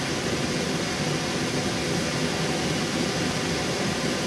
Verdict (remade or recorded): recorded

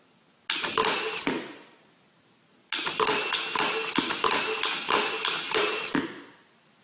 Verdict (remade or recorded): recorded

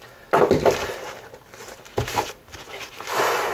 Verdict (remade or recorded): recorded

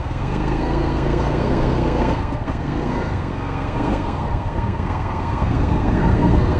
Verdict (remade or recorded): remade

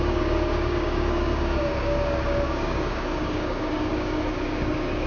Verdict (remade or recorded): remade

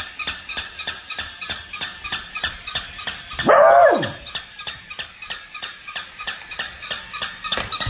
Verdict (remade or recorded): recorded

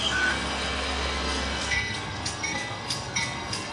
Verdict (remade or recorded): remade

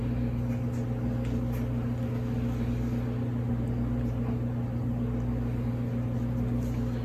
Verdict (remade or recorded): recorded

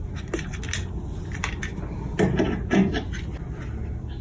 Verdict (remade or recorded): recorded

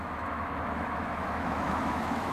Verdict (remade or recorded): remade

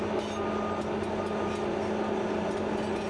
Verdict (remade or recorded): recorded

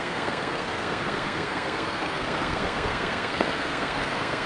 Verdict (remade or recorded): remade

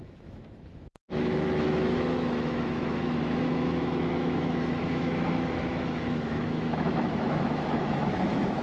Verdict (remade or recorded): remade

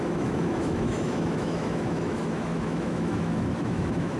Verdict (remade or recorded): remade